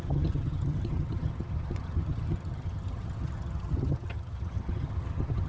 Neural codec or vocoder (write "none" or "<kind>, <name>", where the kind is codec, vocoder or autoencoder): vocoder, HiFi-GAN